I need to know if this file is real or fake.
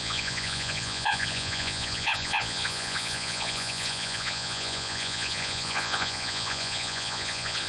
fake